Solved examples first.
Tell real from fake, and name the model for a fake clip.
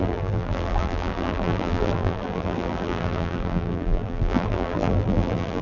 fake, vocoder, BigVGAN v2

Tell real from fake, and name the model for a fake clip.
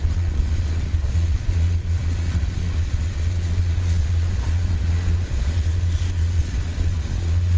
fake, vocoder, Vocos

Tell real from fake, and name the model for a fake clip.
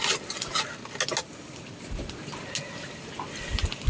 real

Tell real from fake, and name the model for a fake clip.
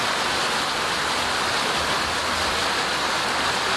real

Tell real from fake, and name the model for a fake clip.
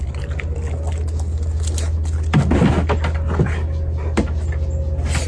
real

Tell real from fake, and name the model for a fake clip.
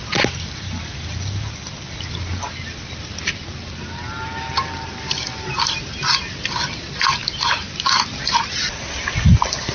real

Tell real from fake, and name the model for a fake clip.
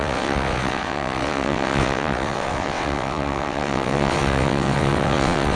fake, vocoder, WaveNeXt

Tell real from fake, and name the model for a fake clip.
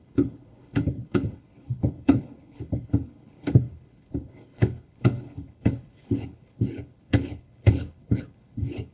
fake, codec, HILCodec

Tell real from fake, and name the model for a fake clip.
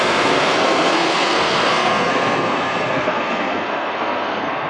fake, codec, SNAC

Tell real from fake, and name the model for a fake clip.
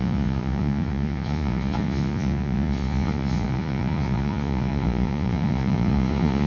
fake, vocoder, Vocos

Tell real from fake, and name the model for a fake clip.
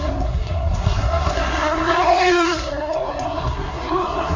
fake, codec, SNAC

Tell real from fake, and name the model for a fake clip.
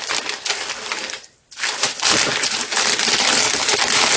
real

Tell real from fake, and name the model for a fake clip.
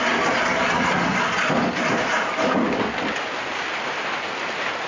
real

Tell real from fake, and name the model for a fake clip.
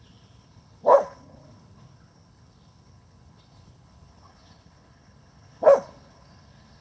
fake, codec, HILCodec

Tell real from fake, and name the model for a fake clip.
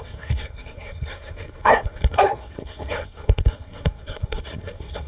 fake, codec, SNAC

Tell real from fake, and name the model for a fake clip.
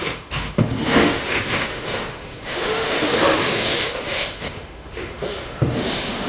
fake, autoencoder, DAC-VAE